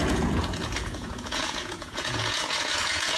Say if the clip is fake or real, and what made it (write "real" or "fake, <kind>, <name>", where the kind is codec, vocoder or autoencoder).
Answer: fake, vocoder, Vocos